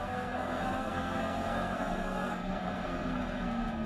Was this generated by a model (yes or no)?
yes